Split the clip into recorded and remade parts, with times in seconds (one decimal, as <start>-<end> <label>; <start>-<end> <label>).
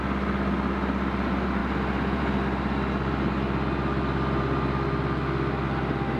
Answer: 0.0-6.2 recorded